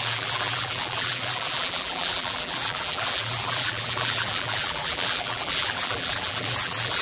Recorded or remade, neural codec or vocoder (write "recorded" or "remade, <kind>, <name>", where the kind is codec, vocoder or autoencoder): remade, vocoder, BigVGAN v2